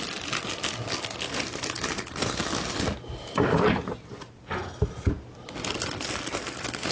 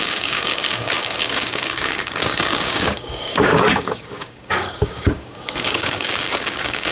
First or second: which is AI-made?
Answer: second